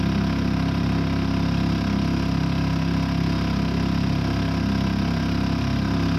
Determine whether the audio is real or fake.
real